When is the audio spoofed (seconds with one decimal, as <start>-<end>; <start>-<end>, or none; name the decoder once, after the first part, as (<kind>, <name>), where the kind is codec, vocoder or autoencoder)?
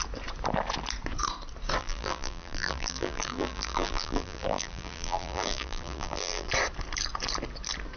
1.8-6.5 (vocoder, BigVGAN v2)